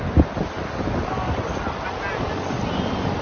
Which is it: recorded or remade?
recorded